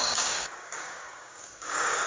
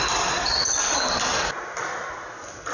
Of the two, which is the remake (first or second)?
first